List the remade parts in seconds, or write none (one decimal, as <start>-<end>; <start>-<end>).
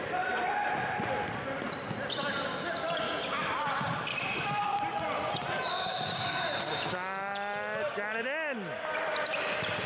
4.1-4.8; 5.7-6.6